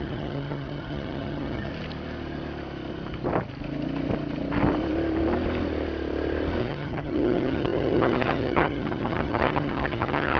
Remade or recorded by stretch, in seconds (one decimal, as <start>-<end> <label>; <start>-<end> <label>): 0.0-1.7 remade; 1.7-6.6 recorded; 6.6-10.4 remade